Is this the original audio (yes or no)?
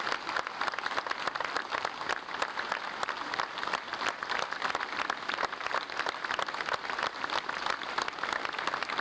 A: yes